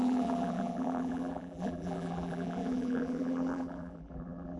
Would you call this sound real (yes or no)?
no